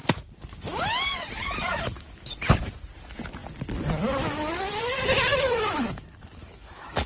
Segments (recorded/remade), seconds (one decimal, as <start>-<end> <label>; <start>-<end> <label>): 0.0-1.4 recorded; 1.4-2.3 remade; 2.3-5.3 recorded; 5.3-7.1 remade